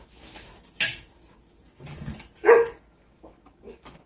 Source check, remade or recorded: remade